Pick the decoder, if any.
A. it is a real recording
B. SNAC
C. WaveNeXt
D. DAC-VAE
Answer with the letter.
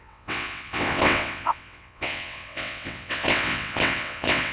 C